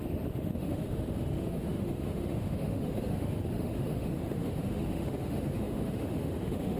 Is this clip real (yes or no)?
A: no